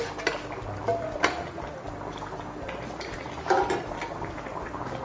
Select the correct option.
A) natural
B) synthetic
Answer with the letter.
A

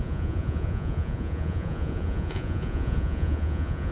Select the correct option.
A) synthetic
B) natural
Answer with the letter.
A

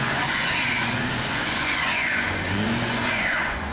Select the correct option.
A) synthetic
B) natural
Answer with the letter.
A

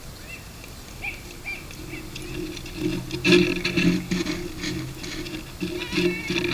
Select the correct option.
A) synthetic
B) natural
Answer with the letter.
B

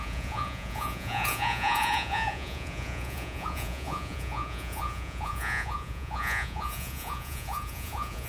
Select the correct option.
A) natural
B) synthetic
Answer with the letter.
B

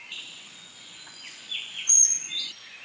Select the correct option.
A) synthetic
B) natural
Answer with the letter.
A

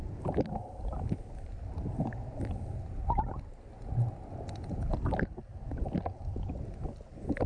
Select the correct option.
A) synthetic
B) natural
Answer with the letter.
B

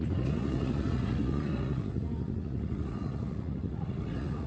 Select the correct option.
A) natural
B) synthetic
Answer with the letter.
B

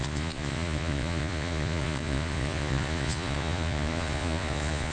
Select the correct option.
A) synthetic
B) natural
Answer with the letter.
A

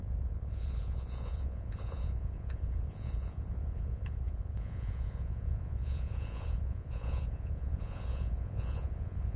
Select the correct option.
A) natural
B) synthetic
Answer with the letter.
B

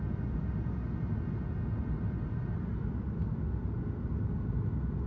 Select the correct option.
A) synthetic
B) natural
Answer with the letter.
B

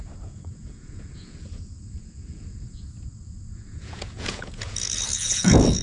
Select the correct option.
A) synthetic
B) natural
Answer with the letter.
A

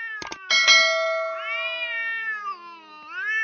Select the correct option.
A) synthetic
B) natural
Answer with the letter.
B